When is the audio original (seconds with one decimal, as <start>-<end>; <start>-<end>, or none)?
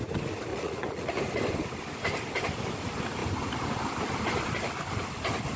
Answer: 0.0-0.5; 1.2-5.6